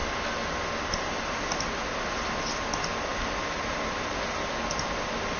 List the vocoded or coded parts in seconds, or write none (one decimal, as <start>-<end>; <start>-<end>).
none